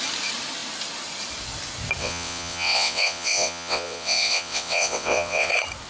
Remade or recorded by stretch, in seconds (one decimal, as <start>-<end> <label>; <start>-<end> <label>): 0.0-2.0 recorded; 2.0-5.5 remade; 5.5-5.9 recorded